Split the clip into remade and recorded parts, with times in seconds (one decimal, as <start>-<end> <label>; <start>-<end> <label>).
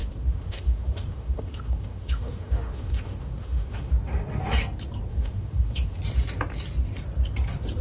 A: 0.0-3.9 remade; 3.9-5.1 recorded; 5.1-6.0 remade; 6.0-7.8 recorded